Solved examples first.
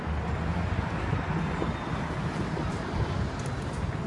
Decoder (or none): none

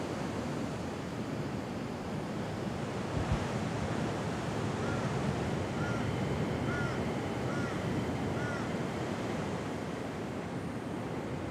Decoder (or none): none